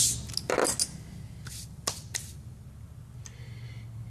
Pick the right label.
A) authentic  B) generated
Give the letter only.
A